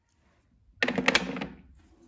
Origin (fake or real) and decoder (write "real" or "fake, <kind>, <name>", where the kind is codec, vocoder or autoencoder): real